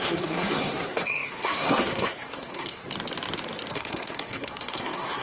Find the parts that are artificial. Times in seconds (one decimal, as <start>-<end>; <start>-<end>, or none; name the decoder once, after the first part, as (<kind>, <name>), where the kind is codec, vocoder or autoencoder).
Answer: 0.0-2.8 (codec, SNAC); 3.7-5.2